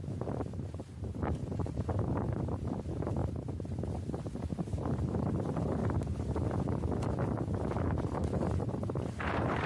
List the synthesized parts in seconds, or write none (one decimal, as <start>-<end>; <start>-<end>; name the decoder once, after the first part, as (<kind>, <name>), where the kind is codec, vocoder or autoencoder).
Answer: 0.0-3.2 (vocoder, BigVGAN v2); 4.4-5.8; 7.8-9.7